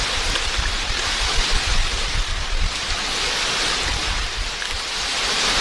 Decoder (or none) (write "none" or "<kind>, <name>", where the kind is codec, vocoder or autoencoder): none